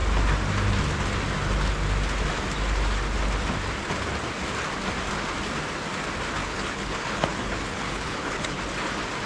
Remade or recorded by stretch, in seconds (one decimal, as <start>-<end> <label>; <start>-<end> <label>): 0.0-6.4 recorded; 6.4-8.6 remade; 8.6-9.3 recorded